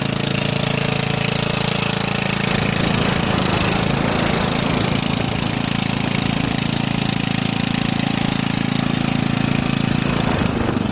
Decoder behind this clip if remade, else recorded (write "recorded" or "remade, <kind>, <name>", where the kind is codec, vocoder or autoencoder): recorded